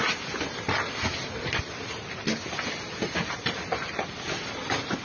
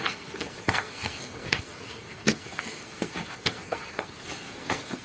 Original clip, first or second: first